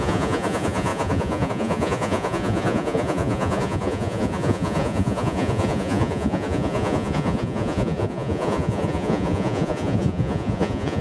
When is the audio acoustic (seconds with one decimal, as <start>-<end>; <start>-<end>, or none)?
none